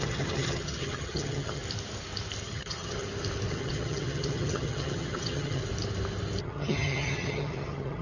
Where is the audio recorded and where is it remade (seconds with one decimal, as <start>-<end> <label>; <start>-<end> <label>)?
0.0-1.6 remade; 1.6-2.4 recorded; 2.4-3.0 remade; 3.0-3.5 recorded; 3.5-5.6 remade; 5.6-6.4 recorded; 6.4-8.0 remade